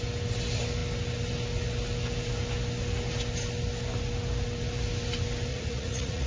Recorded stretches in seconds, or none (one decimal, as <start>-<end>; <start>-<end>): 0.0-5.5